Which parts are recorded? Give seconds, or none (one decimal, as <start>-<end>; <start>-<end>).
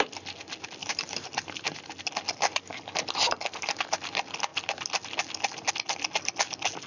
0.0-0.8; 2.1-6.9